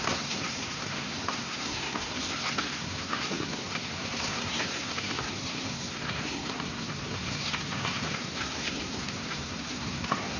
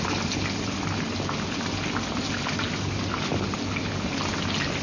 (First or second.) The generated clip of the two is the first